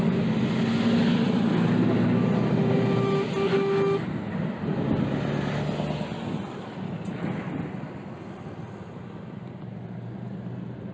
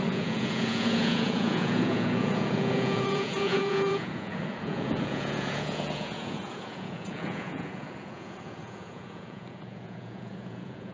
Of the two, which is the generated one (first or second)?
second